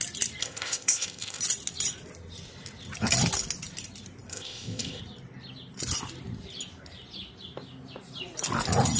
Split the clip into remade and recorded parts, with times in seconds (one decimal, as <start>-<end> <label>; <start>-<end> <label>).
0.0-0.4 recorded; 0.4-1.4 remade; 1.4-4.3 recorded; 4.3-5.0 remade; 5.0-9.0 recorded